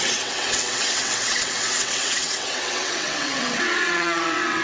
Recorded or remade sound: remade